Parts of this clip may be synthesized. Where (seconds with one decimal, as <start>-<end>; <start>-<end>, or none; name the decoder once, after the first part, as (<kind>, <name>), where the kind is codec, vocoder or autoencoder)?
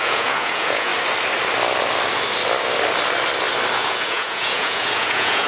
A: 0.0-0.9 (vocoder, Vocos); 3.7-5.5